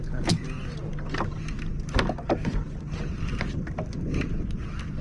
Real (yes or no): yes